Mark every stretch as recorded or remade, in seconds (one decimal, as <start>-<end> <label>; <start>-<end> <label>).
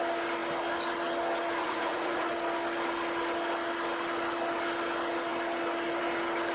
0.0-1.6 recorded; 1.6-2.3 remade; 2.3-6.5 recorded